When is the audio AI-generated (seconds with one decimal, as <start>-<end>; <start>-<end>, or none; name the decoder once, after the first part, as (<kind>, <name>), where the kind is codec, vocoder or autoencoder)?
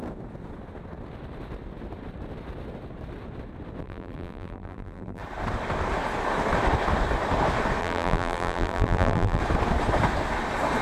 3.8-5.2 (vocoder, BigVGAN v2); 7.8-9.4